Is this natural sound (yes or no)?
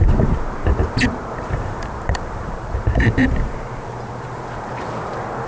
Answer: no